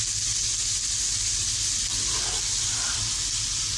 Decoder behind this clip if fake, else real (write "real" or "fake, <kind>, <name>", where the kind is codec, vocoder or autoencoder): real